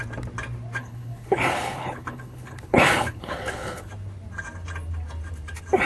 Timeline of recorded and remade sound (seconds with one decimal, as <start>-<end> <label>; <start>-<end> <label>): 0.0-0.8 recorded; 0.8-3.9 remade; 3.9-5.9 recorded